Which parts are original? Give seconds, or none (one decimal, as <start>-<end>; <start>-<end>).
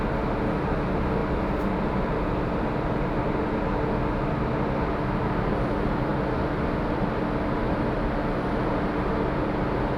0.0-10.0